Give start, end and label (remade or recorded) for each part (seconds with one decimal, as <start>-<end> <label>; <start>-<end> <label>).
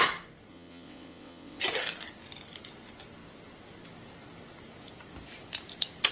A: 0.0-0.5 recorded; 0.5-1.6 remade; 1.6-6.1 recorded